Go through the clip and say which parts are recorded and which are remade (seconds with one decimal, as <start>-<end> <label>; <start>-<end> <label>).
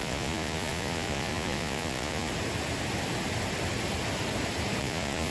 0.0-2.3 remade; 2.3-4.8 recorded; 4.8-5.3 remade